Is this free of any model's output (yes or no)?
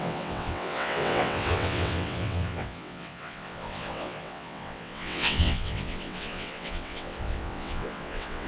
no